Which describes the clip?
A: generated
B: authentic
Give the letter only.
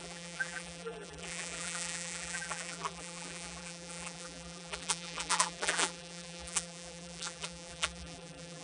A